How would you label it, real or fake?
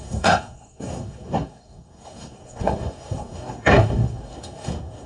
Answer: fake